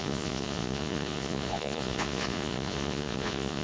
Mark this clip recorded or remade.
remade